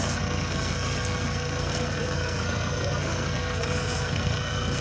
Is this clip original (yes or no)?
no